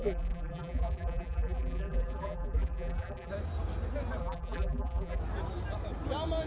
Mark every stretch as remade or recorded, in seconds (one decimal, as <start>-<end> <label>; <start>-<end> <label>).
0.0-3.3 remade; 3.3-4.2 recorded; 4.2-5.2 remade; 5.2-6.5 recorded

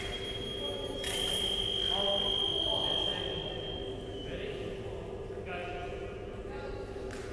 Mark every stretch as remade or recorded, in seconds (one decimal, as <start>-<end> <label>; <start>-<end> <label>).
0.0-7.3 recorded